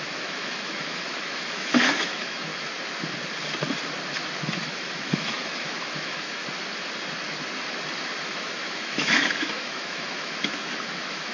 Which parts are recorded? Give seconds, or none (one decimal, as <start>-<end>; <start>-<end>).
2.5-4.4; 6.4-8.2